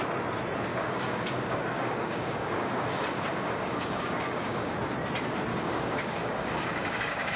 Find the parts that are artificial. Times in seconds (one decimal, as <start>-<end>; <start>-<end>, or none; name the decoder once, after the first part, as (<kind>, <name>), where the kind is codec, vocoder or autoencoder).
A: 0.7-4.8 (codec, DAC); 5.5-7.4